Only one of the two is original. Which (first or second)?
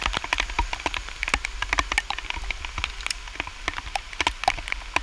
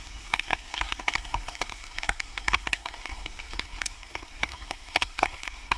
first